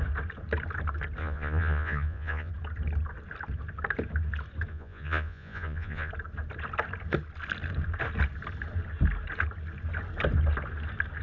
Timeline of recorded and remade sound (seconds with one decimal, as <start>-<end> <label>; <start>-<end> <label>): 0.0-1.2 recorded; 1.2-2.5 remade; 2.5-4.7 recorded; 4.7-6.1 remade; 6.1-11.2 recorded